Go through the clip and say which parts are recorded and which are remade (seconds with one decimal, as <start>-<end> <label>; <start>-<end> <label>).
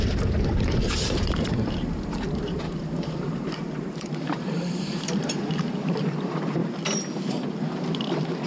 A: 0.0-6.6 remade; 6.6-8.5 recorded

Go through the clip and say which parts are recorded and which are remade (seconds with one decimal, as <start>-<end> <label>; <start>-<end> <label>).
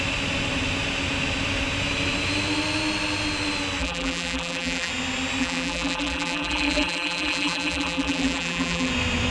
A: 0.0-3.8 recorded; 3.8-4.9 remade; 4.9-5.4 recorded; 5.4-8.9 remade; 8.9-9.3 recorded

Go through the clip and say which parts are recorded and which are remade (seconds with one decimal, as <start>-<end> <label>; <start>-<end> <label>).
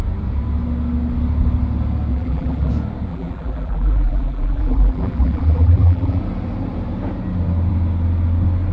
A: 0.0-2.1 recorded; 2.1-2.7 remade; 2.7-3.1 recorded; 3.1-6.2 remade; 6.2-8.7 recorded